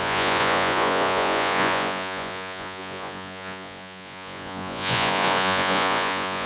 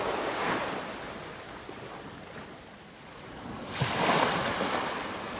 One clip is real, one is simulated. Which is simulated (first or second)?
first